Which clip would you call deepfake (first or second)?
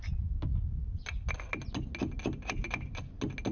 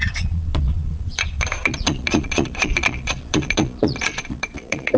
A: second